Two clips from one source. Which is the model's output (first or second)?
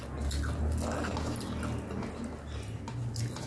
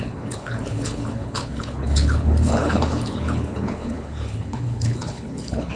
second